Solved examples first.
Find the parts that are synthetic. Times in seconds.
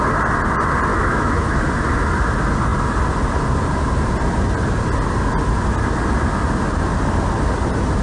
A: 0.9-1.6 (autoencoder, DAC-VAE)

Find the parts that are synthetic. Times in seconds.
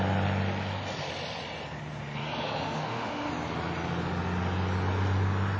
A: 2.2-3.3 (autoencoder, DAC-VAE)